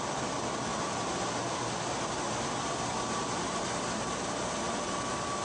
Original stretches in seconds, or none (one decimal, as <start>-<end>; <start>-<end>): 0.0-5.4